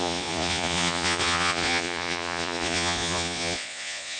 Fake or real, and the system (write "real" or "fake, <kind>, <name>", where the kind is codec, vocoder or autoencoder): fake, vocoder, Vocos